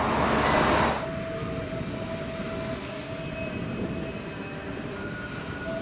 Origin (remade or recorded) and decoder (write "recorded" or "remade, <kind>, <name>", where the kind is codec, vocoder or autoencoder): recorded